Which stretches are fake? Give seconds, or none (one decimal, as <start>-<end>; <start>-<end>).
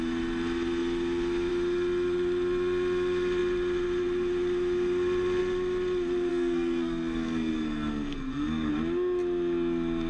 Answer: 6.3-8.7